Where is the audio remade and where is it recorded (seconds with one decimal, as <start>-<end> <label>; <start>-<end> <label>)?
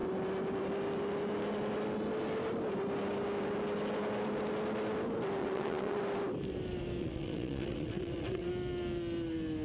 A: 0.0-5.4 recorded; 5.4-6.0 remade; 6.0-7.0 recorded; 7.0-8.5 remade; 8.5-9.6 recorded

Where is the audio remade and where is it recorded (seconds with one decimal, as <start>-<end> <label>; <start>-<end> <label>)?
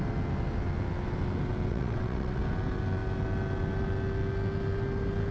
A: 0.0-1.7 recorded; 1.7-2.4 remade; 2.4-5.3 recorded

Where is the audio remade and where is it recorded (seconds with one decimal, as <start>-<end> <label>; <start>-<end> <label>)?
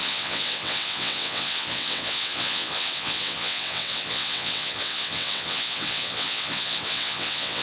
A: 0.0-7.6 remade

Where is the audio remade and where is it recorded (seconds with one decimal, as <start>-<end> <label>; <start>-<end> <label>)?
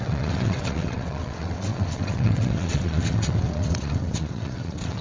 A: 0.0-5.0 remade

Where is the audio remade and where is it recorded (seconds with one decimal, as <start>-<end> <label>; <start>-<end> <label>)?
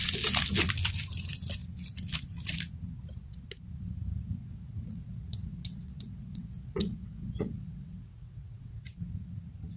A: 0.0-4.4 recorded; 4.4-9.1 remade; 9.1-9.8 recorded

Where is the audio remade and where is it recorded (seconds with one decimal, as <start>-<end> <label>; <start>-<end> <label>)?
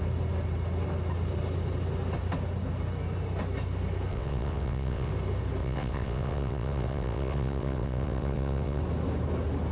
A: 0.0-4.1 recorded; 4.1-5.1 remade; 5.1-5.6 recorded; 5.6-8.8 remade; 8.8-9.7 recorded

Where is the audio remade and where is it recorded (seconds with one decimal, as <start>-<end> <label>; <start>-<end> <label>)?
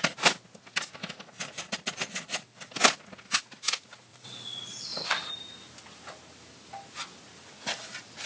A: 0.0-4.1 recorded; 4.1-5.3 remade; 5.3-8.3 recorded